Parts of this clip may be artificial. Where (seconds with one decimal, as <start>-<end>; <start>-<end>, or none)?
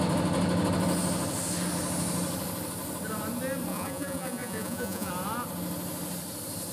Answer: 3.7-5.1